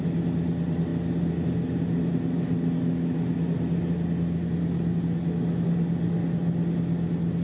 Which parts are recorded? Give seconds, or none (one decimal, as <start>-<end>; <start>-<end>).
0.0-7.4